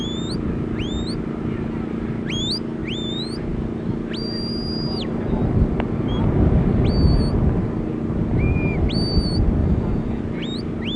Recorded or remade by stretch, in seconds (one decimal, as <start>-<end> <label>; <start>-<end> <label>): 0.0-9.6 recorded; 9.6-10.2 remade; 10.2-11.0 recorded